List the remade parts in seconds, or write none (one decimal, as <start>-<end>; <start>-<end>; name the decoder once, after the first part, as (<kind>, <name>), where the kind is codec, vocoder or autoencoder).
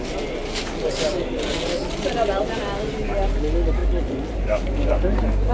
3.8-4.7 (vocoder, BigVGAN v2)